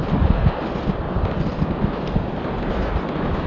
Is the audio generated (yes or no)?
no